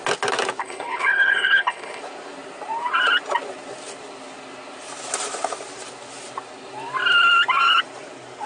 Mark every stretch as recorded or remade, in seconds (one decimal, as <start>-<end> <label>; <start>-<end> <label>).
0.0-0.6 recorded; 0.6-2.0 remade; 2.0-8.5 recorded